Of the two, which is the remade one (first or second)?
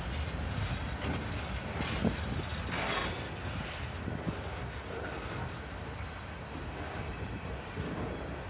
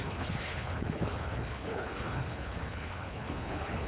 second